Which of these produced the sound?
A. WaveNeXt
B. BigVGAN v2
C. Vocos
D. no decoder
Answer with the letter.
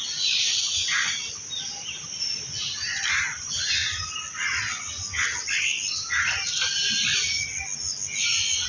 D